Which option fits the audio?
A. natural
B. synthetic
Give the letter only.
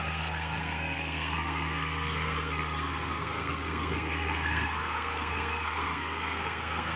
B